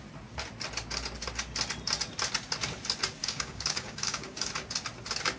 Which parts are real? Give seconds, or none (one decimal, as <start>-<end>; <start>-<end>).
0.0-3.2; 4.5-5.4